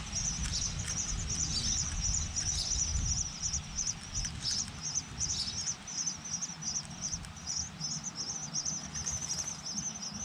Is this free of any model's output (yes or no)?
yes